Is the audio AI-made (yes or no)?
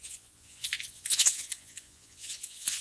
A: yes